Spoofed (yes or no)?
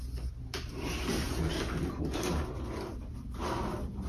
no